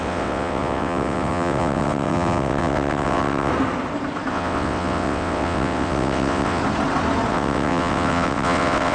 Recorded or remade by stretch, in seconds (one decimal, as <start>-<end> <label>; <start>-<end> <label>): 0.0-3.5 remade; 3.5-4.3 recorded; 4.3-6.6 remade; 6.6-7.3 recorded; 7.3-8.9 remade